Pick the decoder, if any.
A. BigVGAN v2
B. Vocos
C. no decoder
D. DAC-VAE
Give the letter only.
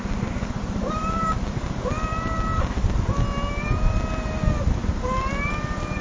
C